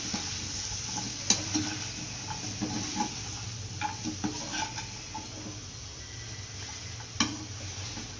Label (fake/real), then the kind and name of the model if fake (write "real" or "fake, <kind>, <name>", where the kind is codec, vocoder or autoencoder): real